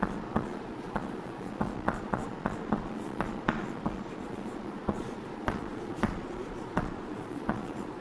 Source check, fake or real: fake